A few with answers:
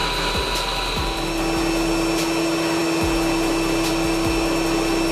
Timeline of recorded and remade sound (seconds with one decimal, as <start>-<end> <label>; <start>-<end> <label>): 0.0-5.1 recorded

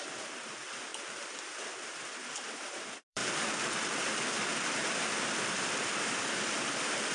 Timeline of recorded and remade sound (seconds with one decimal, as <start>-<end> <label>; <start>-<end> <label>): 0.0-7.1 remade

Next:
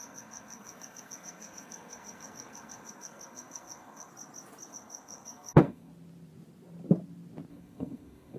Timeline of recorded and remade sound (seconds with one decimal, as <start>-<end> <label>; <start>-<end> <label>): 0.0-4.1 remade; 4.1-4.7 recorded; 4.7-5.9 remade; 5.9-7.5 recorded; 7.5-8.4 remade